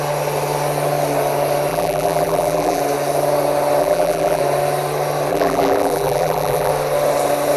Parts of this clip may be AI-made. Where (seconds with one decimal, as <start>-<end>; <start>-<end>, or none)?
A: 1.7-2.8; 3.8-4.4; 5.3-6.7